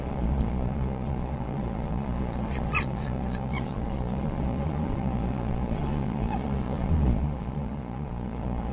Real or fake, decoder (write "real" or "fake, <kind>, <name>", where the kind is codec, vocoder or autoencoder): fake, vocoder, Vocos